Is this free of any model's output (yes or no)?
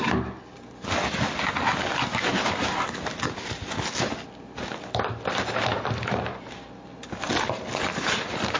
yes